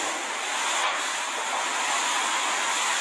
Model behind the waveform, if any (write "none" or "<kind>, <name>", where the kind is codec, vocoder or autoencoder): none